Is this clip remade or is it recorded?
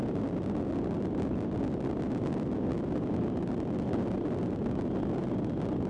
recorded